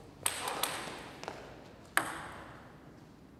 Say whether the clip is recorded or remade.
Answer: recorded